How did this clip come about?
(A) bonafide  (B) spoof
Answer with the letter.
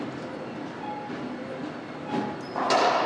A